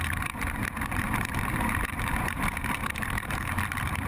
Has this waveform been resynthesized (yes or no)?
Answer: yes